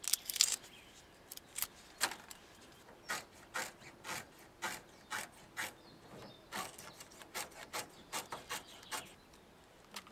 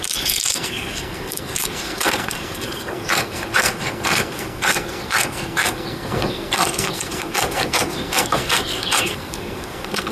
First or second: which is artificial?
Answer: second